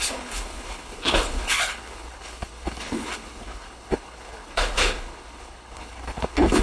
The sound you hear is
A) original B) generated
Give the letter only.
B